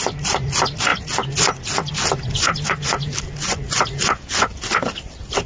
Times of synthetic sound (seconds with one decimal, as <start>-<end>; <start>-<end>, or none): none